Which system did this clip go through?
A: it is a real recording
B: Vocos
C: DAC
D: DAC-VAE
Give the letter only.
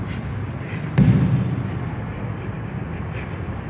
A